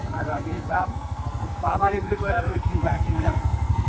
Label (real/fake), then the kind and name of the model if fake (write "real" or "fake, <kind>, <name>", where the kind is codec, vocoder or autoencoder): fake, codec, SNAC